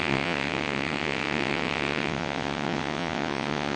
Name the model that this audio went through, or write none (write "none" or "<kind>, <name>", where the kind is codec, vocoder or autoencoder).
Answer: vocoder, WaveNeXt